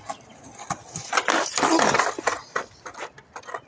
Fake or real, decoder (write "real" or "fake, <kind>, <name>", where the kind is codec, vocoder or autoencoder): real